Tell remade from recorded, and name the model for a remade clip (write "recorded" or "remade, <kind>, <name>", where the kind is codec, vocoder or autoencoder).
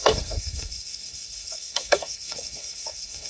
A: remade, codec, SNAC